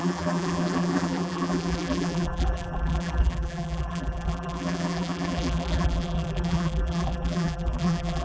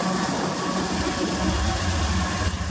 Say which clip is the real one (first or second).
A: second